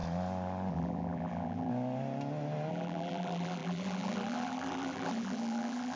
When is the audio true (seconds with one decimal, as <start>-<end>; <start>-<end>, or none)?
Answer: 0.0-0.7; 1.7-2.7